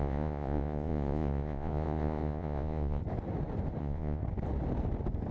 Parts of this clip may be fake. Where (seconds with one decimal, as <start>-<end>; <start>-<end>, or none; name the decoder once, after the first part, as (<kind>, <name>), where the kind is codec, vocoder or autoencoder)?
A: 0.0-3.0 (vocoder, Vocos); 3.8-4.2